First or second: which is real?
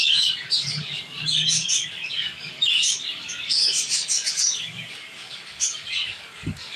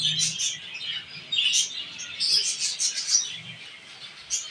second